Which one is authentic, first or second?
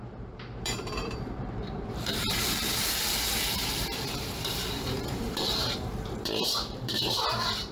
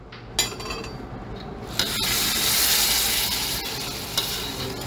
second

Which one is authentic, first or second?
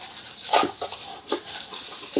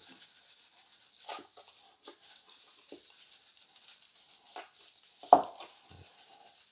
second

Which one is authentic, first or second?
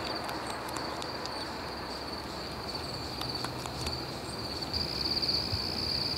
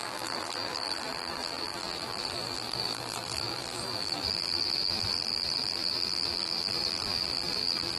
first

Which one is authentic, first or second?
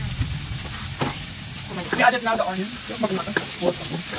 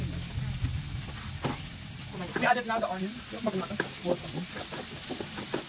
second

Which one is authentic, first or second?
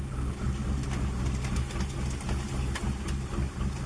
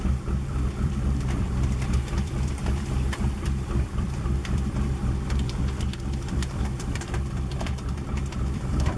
first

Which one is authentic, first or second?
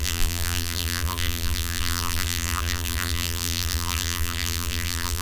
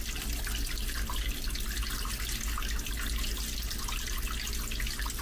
second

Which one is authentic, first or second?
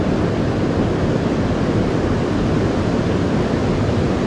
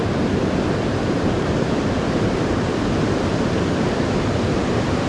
first